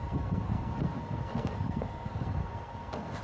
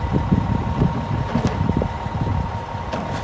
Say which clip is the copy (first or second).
first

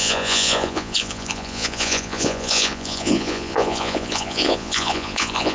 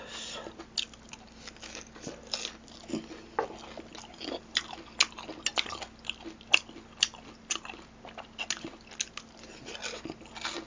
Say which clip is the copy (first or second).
first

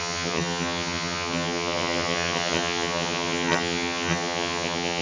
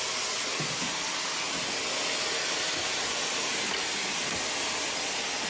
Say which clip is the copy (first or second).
first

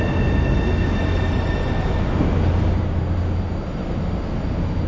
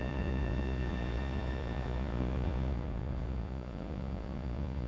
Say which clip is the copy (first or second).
second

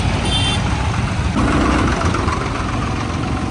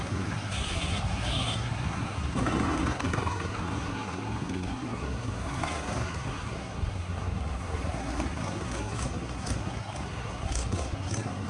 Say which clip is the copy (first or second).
second